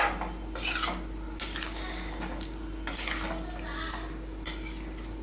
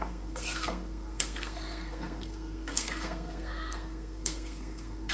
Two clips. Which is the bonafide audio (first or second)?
first